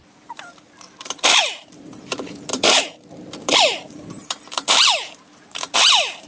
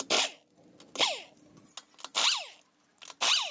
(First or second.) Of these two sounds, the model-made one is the first